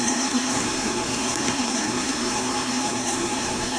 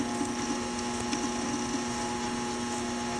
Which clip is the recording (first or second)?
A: second